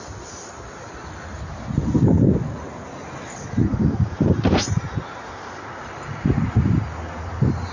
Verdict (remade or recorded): recorded